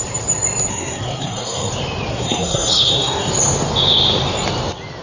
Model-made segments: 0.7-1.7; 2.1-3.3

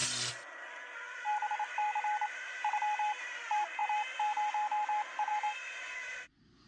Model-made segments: none

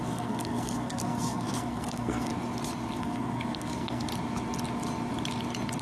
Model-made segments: 0.0-2.3; 3.0-4.1

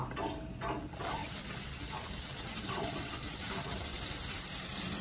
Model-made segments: 1.2-4.0

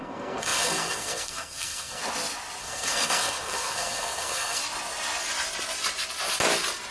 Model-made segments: 0.0-2.0; 2.6-4.6

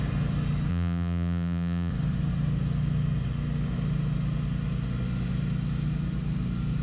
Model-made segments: 0.7-1.9

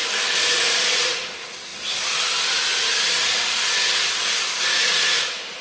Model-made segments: none